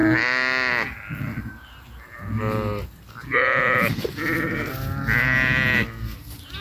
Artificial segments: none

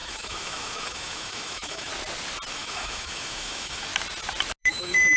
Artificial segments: 0.0-1.9 (autoencoder, DAC-VAE); 2.5-3.9; 4.6-5.2

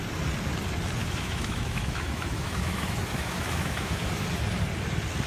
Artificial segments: 1.0-4.2 (autoencoder, DAC-VAE)

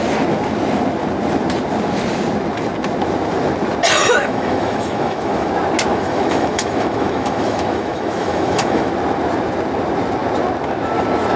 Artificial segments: 4.0-5.5 (autoencoder, DAC-VAE); 5.9-8.9

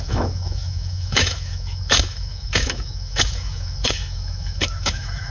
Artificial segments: 0.0-5.3 (autoencoder, DAC-VAE)

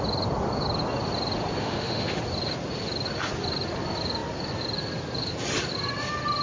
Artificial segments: 1.6-2.2 (autoencoder, DAC-VAE)

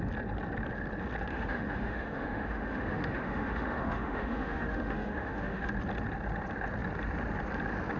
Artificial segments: 1.3-5.7 (autoencoder, DAC-VAE)

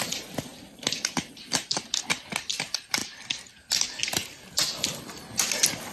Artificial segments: none